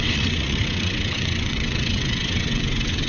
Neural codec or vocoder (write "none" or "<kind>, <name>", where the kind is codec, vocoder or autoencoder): vocoder, WaveNeXt